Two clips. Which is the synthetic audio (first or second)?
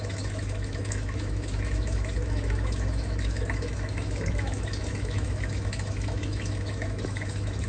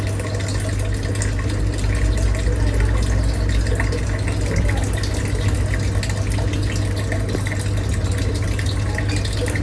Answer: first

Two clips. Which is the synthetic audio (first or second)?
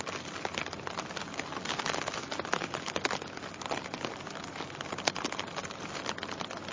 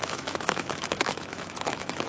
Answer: second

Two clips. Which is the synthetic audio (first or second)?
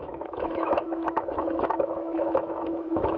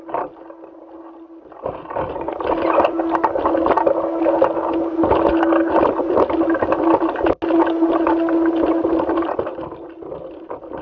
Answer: first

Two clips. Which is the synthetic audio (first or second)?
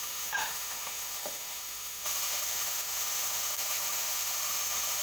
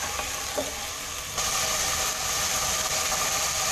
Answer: first